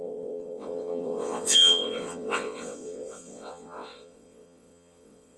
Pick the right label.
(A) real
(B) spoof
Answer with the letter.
B